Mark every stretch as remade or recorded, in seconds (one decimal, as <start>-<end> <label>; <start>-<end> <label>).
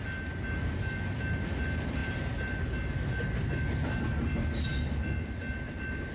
0.0-6.1 recorded